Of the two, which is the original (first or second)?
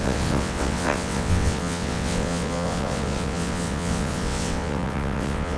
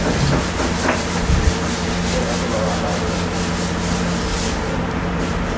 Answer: second